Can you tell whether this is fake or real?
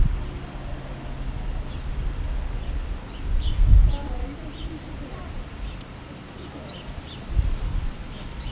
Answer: real